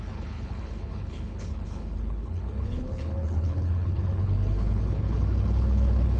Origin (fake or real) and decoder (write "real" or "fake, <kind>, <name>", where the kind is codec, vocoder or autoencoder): fake, codec, HILCodec